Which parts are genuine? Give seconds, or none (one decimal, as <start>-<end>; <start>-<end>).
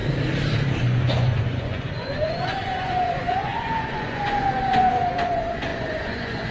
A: 0.0-0.8